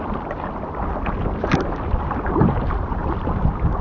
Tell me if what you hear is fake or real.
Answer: real